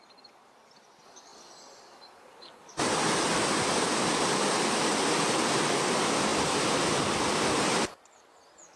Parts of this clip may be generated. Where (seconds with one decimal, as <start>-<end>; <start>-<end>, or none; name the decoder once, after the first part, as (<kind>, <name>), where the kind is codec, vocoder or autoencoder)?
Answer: none